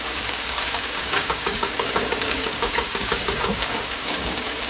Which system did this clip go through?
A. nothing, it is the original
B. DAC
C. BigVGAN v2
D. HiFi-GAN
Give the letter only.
B